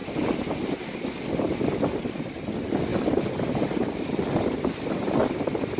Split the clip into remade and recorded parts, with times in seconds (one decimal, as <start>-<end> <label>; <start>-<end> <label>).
0.0-5.8 recorded